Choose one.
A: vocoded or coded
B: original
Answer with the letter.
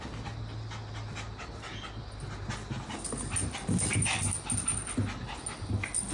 B